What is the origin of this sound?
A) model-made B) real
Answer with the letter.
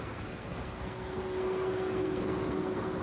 A